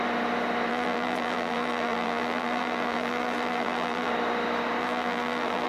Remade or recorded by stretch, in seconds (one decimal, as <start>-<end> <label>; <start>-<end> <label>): 0.0-0.7 recorded; 0.7-4.1 remade; 4.1-4.8 recorded; 4.8-5.7 remade